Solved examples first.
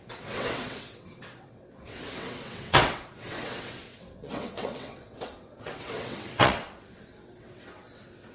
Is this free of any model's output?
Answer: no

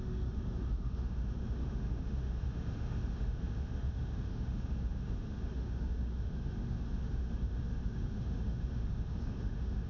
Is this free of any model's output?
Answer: no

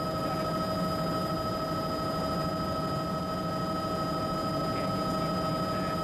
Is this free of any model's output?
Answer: yes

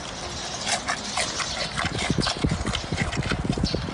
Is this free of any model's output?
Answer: yes